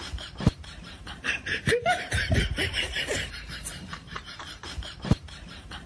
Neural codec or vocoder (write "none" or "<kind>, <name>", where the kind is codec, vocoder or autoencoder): vocoder, BigVGAN v2